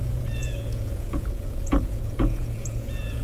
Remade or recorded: remade